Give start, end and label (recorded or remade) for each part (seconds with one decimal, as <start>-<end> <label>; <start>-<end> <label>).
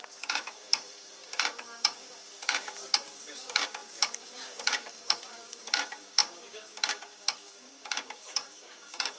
0.0-9.2 remade